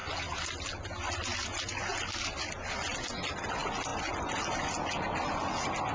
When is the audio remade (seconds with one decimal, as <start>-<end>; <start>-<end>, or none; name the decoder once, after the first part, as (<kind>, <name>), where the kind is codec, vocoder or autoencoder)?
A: none